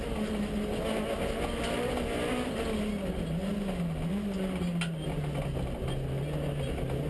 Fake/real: real